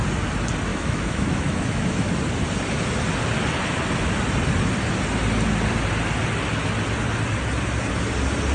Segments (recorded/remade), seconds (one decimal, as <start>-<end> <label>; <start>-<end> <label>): 0.0-0.7 recorded; 0.7-2.1 remade; 2.1-8.5 recorded